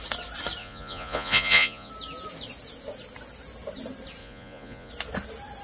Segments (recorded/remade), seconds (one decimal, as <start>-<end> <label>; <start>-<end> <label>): 0.0-0.6 recorded; 0.6-1.9 remade; 1.9-4.2 recorded; 4.2-4.9 remade; 4.9-5.6 recorded